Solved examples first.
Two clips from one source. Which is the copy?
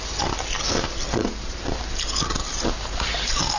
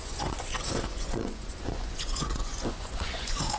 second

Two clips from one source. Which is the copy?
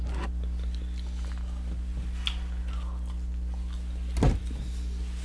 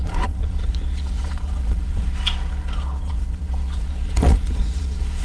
second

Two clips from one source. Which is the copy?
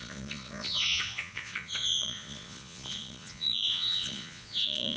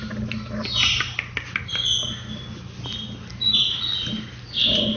first